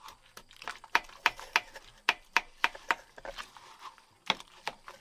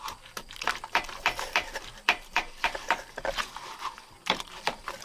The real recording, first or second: first